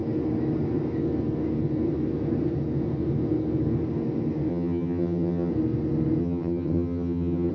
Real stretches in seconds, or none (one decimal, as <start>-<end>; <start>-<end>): 0.0-4.5; 5.5-6.2